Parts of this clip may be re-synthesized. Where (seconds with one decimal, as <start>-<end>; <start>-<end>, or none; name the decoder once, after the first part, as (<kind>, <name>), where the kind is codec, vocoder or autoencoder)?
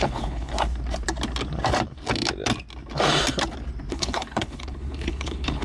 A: 0.0-0.5 (codec, HILCodec); 3.9-5.6